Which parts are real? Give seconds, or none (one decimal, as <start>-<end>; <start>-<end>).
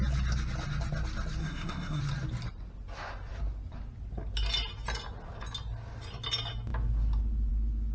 0.0-1.4; 2.0-7.9